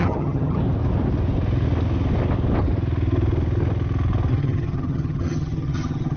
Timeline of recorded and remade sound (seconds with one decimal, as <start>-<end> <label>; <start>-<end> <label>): 0.0-0.6 remade; 0.6-4.3 recorded; 4.3-6.2 remade